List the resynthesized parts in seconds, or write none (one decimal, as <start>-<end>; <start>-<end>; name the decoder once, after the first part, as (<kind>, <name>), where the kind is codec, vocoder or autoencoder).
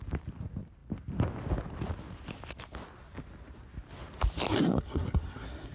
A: 4.5-5.7 (codec, SNAC)